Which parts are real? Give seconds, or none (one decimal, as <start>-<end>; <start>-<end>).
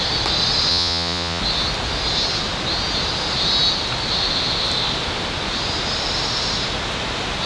0.0-0.7; 1.4-7.5